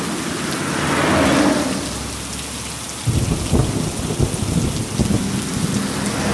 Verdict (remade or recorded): recorded